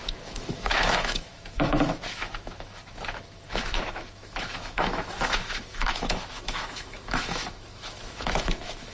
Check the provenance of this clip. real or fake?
fake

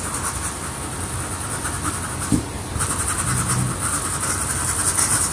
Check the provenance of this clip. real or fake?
real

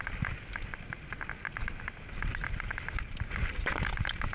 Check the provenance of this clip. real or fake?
real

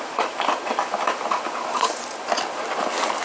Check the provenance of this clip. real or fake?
real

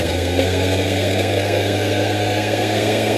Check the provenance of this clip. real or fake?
fake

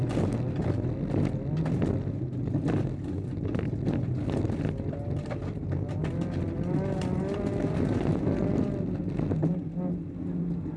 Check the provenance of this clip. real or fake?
real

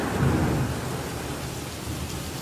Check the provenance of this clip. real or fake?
real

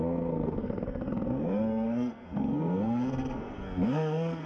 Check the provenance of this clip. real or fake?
fake